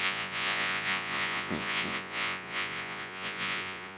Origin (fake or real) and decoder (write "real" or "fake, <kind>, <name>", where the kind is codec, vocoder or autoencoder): fake, vocoder, Vocos